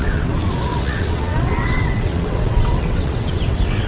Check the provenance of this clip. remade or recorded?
remade